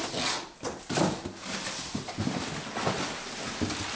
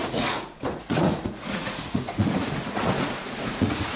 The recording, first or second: first